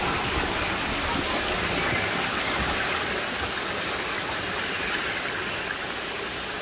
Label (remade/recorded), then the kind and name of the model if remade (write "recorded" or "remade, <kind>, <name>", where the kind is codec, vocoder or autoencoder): recorded